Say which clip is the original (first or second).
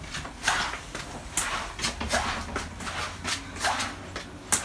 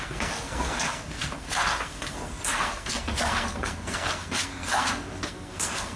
first